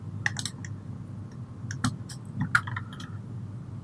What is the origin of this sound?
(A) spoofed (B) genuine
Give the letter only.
B